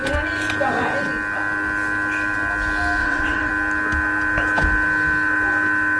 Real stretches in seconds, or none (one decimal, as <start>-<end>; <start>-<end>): 0.0-3.0; 3.5-6.0